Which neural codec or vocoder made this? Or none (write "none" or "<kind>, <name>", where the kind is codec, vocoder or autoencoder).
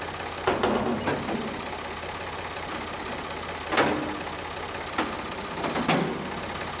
none